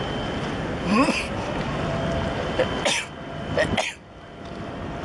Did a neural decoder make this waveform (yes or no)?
yes